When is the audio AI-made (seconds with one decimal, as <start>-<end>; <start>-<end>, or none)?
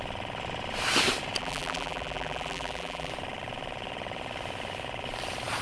1.4-3.1